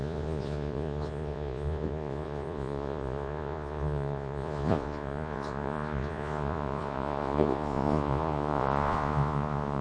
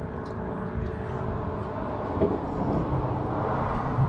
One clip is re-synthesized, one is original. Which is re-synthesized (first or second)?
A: first